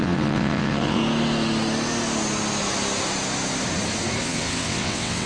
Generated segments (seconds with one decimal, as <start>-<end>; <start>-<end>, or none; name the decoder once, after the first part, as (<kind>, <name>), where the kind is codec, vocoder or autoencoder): 0.0-1.0 (vocoder, WaveNeXt); 4.2-5.3